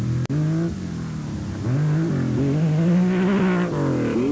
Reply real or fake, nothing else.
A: real